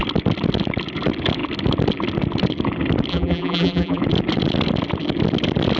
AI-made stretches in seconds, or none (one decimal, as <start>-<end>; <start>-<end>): 3.1-4.0